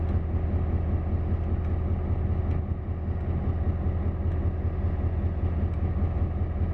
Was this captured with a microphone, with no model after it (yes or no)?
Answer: yes